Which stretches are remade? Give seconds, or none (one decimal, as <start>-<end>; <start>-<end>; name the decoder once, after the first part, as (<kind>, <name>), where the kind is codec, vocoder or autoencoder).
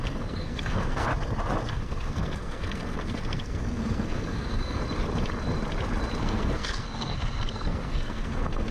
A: 0.0-1.1 (codec, SNAC); 1.7-4.8; 6.2-8.7